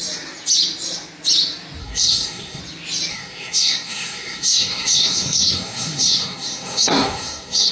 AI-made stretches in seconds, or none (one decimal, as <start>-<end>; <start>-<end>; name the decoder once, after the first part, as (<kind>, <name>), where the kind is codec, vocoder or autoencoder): 1.8-2.6 (codec, SNAC); 3.1-7.7

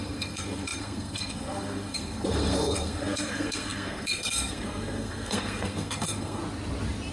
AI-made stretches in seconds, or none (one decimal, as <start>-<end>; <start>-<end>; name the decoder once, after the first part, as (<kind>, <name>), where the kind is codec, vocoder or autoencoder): 0.0-6.4 (codec, SNAC)

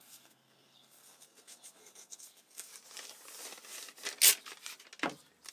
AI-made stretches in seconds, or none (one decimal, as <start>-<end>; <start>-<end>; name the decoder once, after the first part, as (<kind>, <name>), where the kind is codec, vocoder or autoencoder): 0.0-2.7 (codec, SNAC)

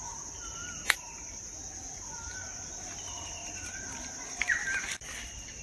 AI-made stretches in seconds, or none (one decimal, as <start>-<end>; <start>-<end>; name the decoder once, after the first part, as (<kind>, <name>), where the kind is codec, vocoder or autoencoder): none